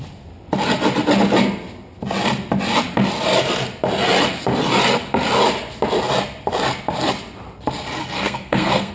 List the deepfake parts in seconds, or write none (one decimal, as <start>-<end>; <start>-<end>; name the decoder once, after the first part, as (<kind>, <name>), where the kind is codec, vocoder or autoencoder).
8.0-8.9 (codec, SNAC)